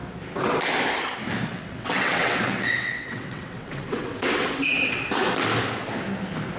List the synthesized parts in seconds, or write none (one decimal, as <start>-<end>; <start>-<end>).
1.5-5.0

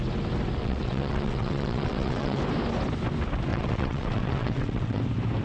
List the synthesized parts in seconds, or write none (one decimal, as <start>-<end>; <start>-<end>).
0.6-2.4; 3.5-5.0

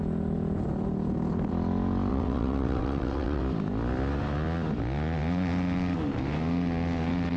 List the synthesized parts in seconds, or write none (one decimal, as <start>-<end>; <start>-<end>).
2.1-3.4

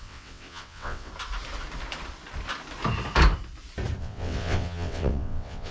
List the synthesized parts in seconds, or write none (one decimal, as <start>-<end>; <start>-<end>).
0.0-1.1; 4.0-5.7

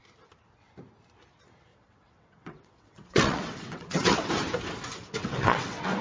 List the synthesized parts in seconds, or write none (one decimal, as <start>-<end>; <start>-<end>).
1.7-4.3; 5.2-6.0

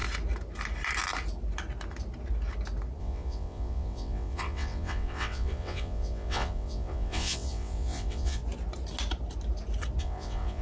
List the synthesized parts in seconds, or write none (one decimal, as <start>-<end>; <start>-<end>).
3.0-8.4; 10.0-10.6

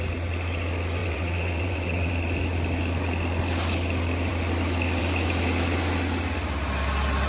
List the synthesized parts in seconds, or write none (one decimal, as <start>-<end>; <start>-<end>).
1.0-2.1